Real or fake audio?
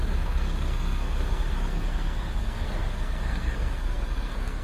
fake